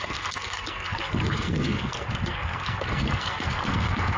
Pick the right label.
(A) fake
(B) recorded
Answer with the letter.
A